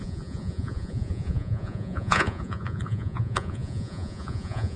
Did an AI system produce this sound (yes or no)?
yes